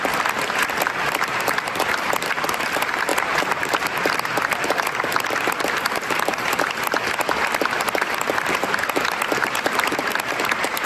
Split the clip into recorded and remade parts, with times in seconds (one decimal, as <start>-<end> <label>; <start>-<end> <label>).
0.0-10.9 recorded